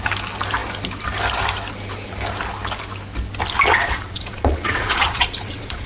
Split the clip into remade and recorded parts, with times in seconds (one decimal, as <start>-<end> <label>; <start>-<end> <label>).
0.0-3.7 recorded; 3.7-5.9 remade